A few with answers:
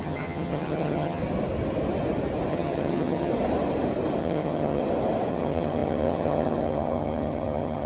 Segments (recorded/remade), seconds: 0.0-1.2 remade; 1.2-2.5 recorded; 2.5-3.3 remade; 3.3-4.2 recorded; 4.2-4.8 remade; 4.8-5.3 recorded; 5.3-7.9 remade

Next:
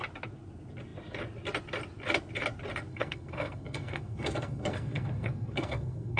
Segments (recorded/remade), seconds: 0.0-2.9 recorded; 2.9-6.2 remade

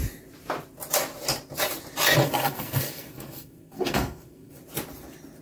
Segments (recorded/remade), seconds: 0.0-2.2 recorded; 2.2-4.6 remade; 4.6-5.4 recorded

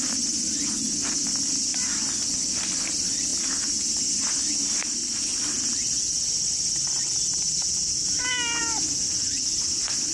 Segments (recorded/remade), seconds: 0.0-10.1 recorded

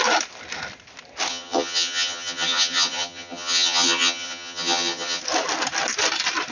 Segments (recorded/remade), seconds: 0.0-1.3 recorded; 1.3-5.2 remade; 5.2-6.5 recorded

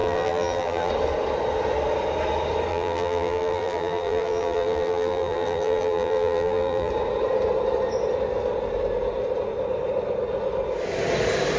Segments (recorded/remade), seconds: 0.0-0.9 remade; 0.9-2.7 recorded; 2.7-6.9 remade; 6.9-11.6 recorded

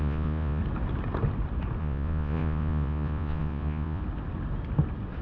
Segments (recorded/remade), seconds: 0.0-0.6 remade; 0.6-1.8 recorded; 1.8-4.0 remade; 4.0-5.2 recorded